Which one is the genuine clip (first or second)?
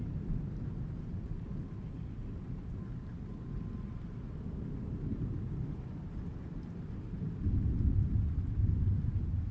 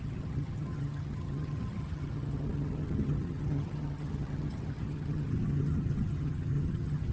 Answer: first